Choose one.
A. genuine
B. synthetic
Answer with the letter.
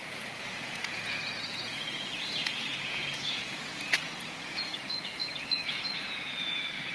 B